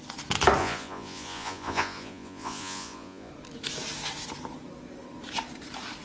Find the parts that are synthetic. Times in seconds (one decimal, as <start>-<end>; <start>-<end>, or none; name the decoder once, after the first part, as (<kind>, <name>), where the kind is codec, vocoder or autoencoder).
0.6-3.3 (vocoder, Vocos)